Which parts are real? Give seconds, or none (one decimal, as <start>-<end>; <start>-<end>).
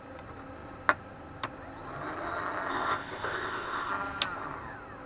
0.0-2.7; 3.9-5.1